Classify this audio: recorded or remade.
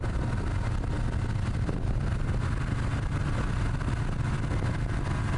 recorded